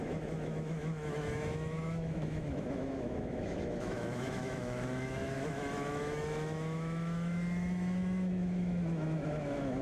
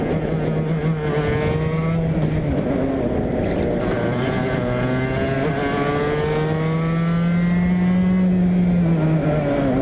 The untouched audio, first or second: second